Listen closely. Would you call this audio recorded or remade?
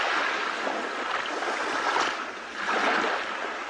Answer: recorded